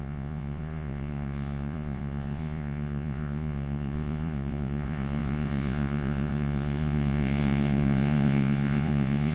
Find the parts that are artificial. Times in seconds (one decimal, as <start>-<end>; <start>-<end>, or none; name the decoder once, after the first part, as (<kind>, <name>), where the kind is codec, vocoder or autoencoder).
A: 0.0-9.3 (vocoder, Vocos)